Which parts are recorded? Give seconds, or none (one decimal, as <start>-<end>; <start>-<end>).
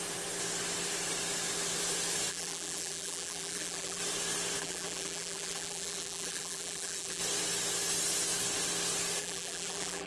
0.0-2.3; 4.0-4.6; 7.2-9.2